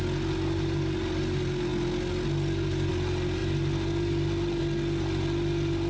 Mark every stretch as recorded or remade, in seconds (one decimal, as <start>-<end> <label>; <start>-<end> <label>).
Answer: 0.0-5.9 recorded